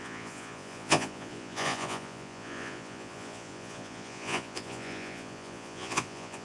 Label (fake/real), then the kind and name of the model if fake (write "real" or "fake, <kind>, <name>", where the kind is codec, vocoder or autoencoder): fake, vocoder, Vocos